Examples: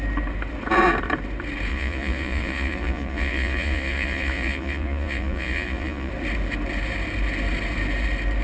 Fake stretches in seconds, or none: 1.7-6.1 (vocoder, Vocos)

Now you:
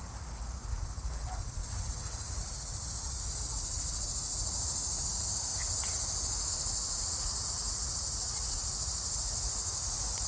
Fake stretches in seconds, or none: 0.0-5.5 (vocoder, Vocos); 6.5-10.3

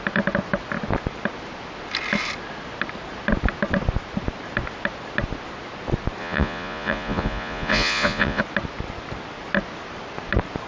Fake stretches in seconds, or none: 6.2-8.4 (vocoder, Vocos)